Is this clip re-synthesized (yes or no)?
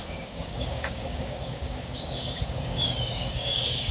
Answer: yes